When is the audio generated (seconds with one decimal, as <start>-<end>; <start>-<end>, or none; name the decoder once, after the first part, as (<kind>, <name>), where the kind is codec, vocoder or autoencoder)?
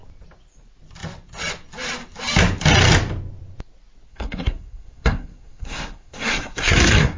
4.1-7.2 (codec, SNAC)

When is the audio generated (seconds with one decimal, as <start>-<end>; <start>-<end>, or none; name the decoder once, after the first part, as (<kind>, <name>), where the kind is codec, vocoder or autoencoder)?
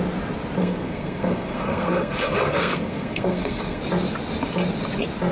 0.6-3.8 (codec, SNAC)